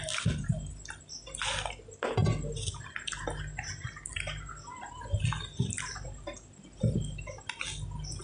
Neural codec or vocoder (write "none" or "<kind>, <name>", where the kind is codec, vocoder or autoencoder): none